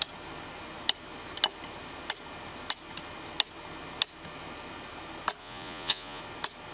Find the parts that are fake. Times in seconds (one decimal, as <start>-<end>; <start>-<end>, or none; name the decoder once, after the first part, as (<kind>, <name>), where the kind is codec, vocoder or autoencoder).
5.4-6.2 (vocoder, Vocos)